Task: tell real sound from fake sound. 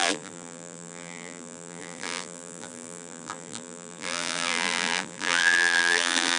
fake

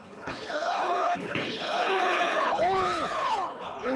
fake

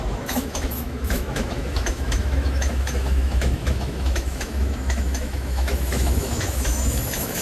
fake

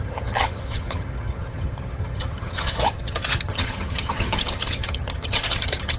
fake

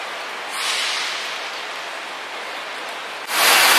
real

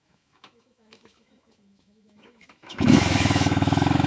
fake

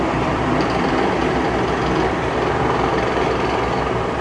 fake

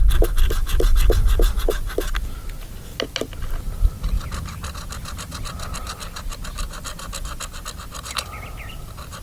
real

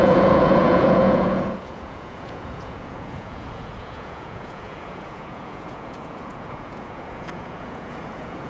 fake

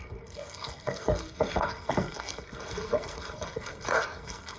fake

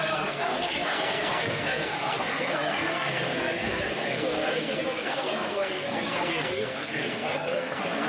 fake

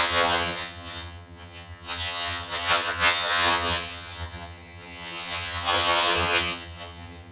fake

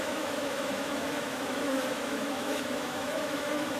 fake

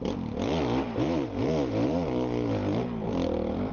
real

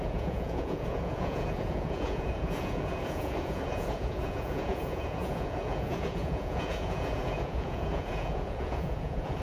fake